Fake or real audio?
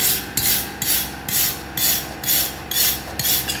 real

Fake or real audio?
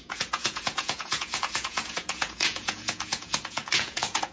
fake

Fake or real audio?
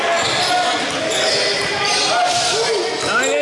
real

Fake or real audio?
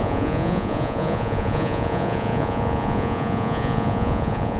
fake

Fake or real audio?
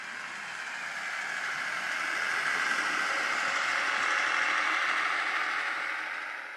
real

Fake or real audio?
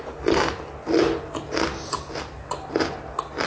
real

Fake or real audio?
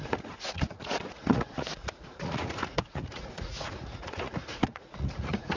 fake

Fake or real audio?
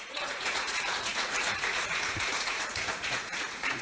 fake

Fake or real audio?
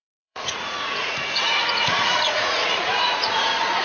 fake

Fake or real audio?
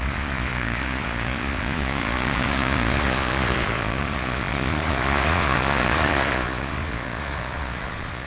fake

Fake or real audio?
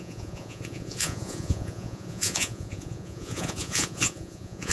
fake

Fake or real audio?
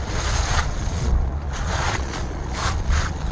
fake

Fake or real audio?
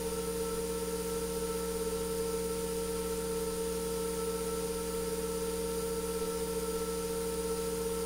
real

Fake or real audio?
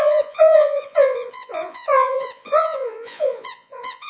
fake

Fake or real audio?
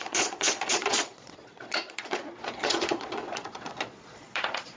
fake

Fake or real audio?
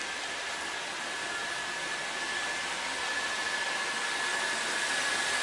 real